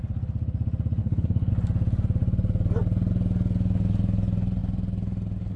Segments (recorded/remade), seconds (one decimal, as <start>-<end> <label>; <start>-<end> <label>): 0.0-1.0 recorded; 1.0-1.5 remade; 1.5-5.6 recorded